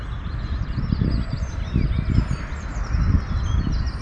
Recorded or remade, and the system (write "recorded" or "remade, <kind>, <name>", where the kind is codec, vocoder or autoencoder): recorded